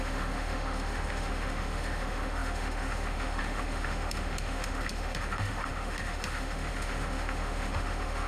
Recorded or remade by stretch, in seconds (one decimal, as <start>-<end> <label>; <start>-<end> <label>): 0.0-8.3 remade